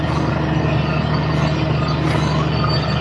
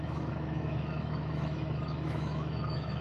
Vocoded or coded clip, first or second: second